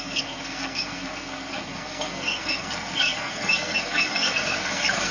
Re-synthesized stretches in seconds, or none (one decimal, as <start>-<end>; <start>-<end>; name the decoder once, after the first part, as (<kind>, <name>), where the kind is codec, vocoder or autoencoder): 0.0-5.1 (codec, SNAC)